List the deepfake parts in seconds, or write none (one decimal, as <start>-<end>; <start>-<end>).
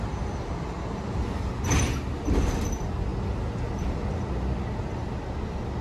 none